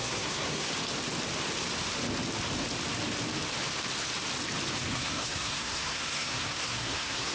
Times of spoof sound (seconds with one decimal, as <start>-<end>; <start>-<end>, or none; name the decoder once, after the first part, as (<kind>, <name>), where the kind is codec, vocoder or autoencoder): 0.0-0.7 (codec, SNAC); 4.9-7.3